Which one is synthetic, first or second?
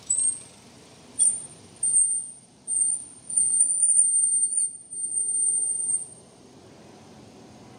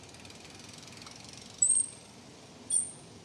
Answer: first